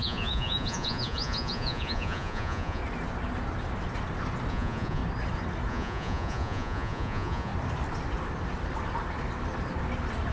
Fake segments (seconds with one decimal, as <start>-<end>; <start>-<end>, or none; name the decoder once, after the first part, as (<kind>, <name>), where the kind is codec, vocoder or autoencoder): 0.0-2.8 (vocoder, Vocos); 4.5-5.0; 5.7-7.5